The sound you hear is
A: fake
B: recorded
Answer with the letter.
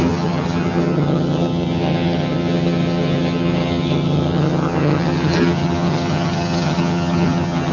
A